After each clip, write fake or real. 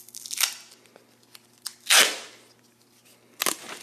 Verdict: real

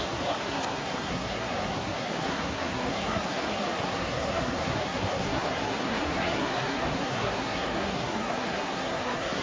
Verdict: fake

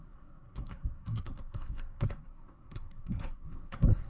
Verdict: fake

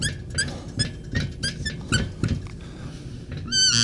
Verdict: real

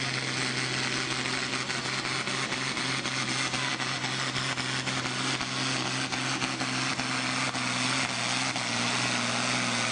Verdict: real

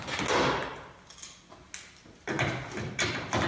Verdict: real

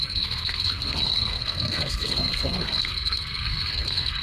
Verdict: fake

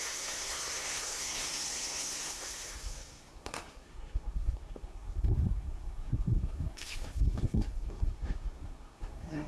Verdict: fake